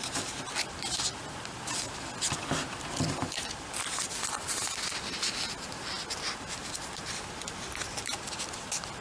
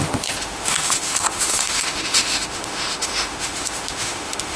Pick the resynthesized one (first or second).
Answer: second